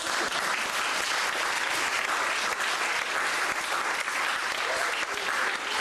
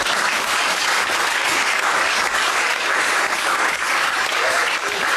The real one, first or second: first